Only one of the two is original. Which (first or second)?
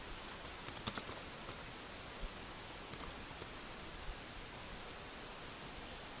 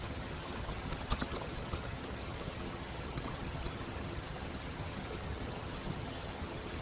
first